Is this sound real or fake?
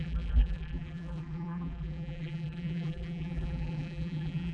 fake